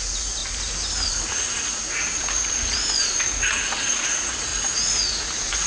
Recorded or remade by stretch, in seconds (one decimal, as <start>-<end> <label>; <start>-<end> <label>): 0.0-0.4 remade; 0.4-1.1 recorded; 1.1-5.7 remade